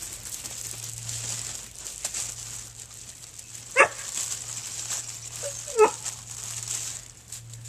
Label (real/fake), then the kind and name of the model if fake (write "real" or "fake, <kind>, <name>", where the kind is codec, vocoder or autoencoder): real